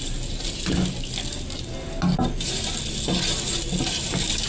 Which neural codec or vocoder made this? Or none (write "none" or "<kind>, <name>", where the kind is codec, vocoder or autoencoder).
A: none